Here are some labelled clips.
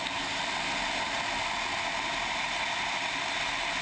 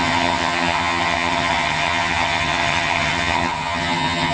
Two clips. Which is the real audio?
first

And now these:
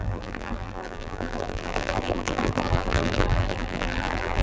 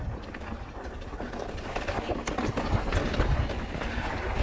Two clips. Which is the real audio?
second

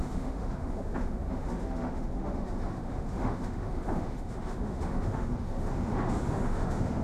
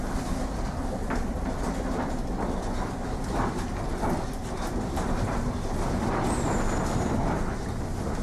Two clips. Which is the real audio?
second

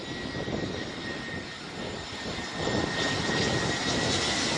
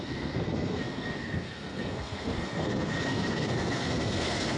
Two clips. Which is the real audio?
first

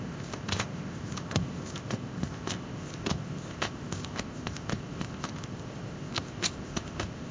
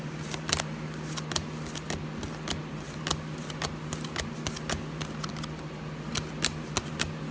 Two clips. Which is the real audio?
second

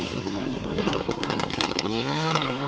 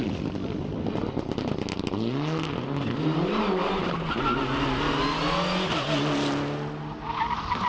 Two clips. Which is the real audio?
second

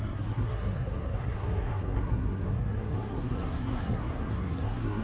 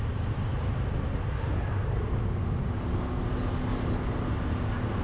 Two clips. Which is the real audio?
second